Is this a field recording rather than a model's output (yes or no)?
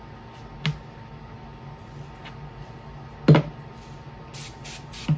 yes